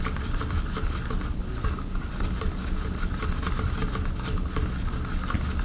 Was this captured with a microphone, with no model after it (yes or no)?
yes